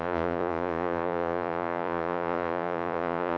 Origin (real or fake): fake